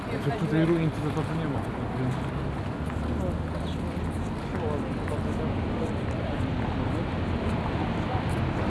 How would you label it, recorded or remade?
recorded